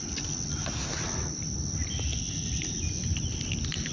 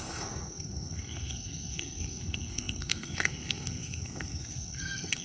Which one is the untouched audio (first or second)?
first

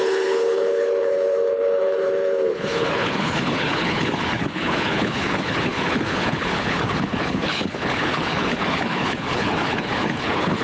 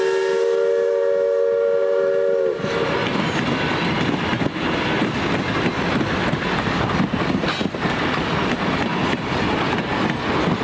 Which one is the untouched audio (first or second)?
second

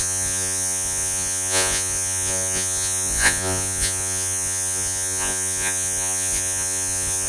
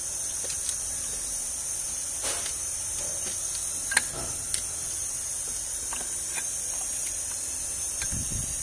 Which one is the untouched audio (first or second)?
second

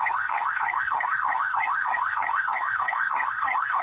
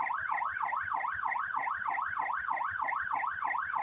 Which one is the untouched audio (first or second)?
second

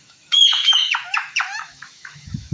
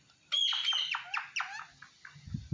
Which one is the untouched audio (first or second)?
second